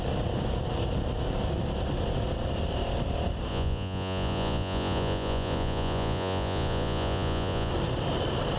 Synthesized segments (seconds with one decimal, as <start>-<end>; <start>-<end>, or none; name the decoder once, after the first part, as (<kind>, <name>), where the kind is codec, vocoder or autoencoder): 3.5-7.7 (vocoder, Vocos)